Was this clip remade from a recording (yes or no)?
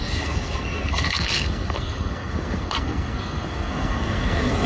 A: yes